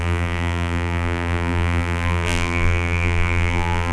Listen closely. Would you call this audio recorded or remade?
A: remade